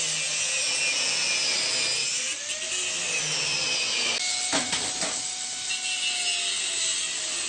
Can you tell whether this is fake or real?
real